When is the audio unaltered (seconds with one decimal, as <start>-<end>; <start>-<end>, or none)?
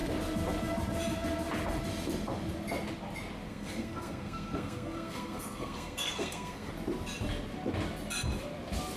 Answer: 0.0-3.5; 6.7-9.0